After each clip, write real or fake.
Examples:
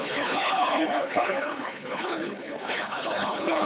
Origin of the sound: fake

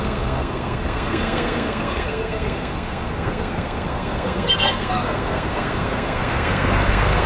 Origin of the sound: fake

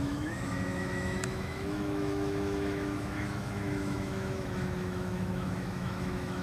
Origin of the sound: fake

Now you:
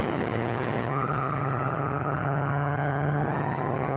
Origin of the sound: fake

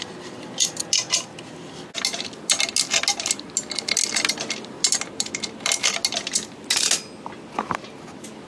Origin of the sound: real